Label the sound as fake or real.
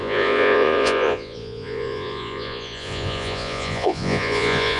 fake